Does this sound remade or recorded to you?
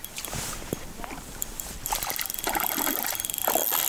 recorded